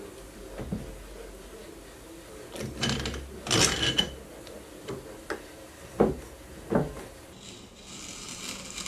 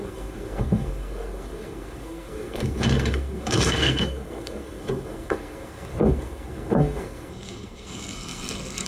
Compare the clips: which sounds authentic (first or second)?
first